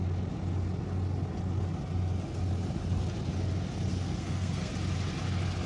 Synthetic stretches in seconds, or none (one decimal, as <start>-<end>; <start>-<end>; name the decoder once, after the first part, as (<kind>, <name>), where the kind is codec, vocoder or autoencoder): 3.9-4.7 (codec, SNAC)